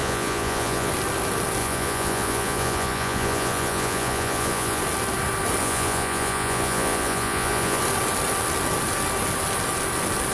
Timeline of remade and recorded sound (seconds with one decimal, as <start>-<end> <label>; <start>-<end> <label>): 0.0-0.9 remade; 0.9-1.6 recorded; 1.6-4.8 remade; 4.8-5.6 recorded; 5.6-7.8 remade; 7.8-10.3 recorded